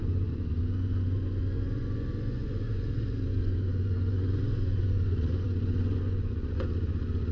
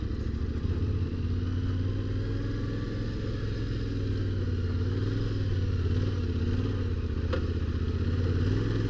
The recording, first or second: second